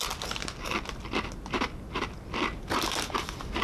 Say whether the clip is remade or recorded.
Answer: recorded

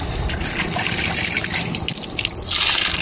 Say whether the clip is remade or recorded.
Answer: recorded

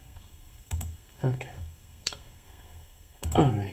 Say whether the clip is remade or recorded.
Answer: remade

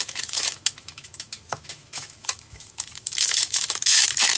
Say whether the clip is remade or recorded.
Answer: remade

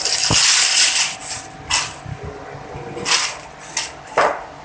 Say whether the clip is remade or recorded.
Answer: recorded